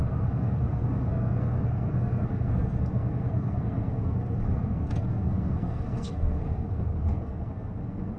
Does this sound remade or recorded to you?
remade